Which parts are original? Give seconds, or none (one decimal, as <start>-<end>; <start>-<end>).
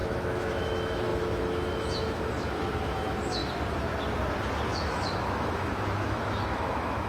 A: 3.4-4.7